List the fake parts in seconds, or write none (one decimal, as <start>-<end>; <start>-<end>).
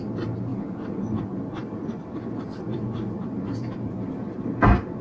1.6-4.2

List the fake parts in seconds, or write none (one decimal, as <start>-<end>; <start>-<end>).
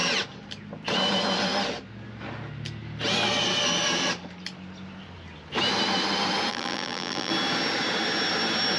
6.5-7.3